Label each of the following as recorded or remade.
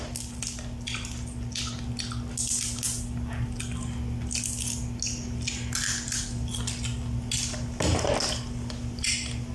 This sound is recorded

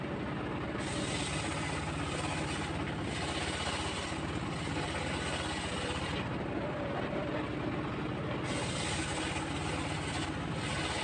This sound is recorded